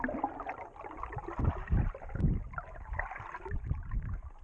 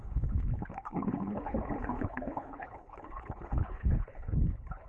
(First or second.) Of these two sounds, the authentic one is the first